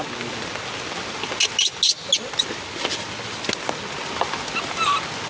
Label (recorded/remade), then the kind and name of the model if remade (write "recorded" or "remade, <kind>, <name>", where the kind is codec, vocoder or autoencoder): recorded